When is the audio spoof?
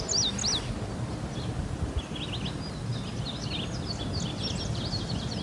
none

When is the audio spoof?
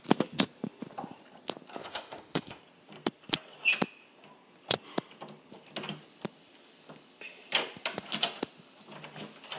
1.8-2.6 (autoencoder, DAC-VAE)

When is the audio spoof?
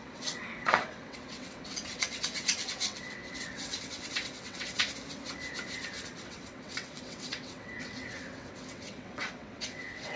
0.0-4.8 (vocoder, WaveNeXt); 6.2-10.2